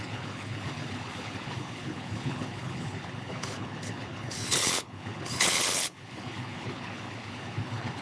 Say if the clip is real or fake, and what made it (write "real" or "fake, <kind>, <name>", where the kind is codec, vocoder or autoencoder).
fake, codec, HILCodec